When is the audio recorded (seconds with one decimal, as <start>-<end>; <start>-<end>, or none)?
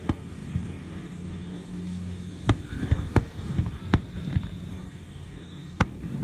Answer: 3.8-4.7